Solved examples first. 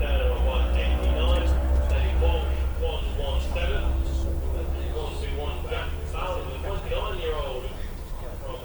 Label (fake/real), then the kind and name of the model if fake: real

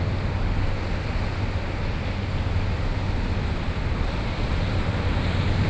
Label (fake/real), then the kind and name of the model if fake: real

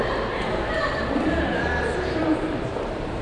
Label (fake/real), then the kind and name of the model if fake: fake, vocoder, BigVGAN v2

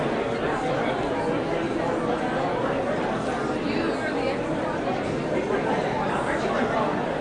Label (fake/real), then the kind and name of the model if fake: real